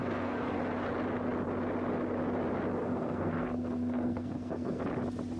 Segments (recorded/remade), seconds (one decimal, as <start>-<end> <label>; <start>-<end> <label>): 0.0-0.6 remade; 0.6-2.8 recorded; 2.8-4.8 remade; 4.8-5.4 recorded